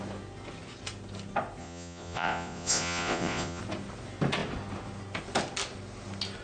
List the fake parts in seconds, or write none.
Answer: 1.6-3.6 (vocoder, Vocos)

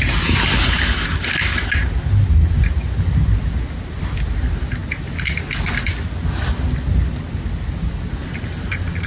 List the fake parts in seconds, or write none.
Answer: none

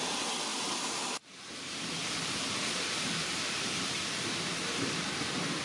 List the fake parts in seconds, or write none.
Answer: 0.5-1.5 (vocoder, BigVGAN v2); 2.0-5.6

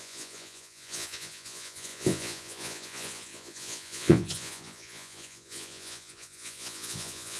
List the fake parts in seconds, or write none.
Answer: 0.0-7.4 (vocoder, Vocos)

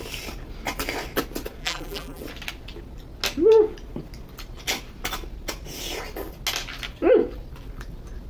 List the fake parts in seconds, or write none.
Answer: 1.6-2.2 (vocoder, BigVGAN v2)